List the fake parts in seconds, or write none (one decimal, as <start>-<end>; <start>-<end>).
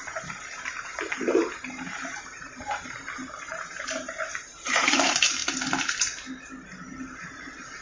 0.0-5.4; 6.9-7.8